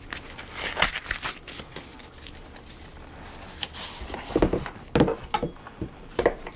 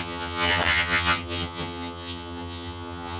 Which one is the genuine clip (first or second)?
first